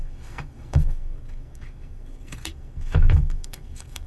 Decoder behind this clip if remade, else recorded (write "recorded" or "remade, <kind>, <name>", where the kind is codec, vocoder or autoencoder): remade, codec, SNAC